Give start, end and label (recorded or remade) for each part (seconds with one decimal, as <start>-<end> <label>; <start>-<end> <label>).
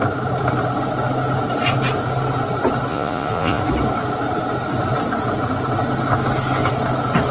0.0-2.9 recorded; 2.9-3.6 remade; 3.6-7.3 recorded